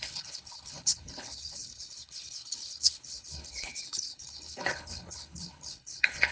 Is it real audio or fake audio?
fake